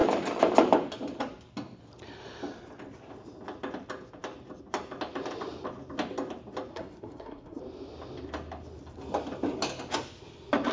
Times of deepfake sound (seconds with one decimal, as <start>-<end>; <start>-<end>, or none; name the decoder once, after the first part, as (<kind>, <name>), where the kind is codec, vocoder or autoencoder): 6.7-7.6 (codec, SNAC)